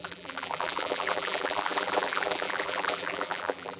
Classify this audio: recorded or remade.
remade